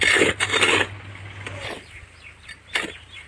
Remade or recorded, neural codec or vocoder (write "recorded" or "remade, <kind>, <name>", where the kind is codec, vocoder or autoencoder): recorded